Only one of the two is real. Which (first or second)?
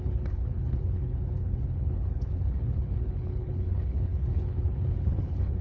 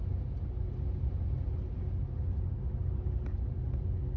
second